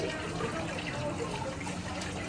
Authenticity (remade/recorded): recorded